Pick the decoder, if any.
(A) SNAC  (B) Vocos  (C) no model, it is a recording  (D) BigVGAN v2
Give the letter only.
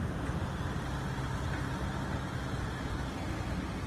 C